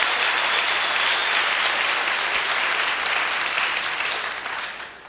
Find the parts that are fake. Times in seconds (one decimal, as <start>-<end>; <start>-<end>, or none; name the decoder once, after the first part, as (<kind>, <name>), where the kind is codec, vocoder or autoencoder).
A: 0.0-1.2 (vocoder, BigVGAN v2); 2.9-5.1